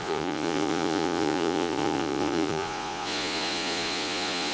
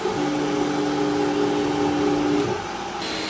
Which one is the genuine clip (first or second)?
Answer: second